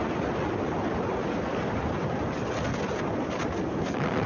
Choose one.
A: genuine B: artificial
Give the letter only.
A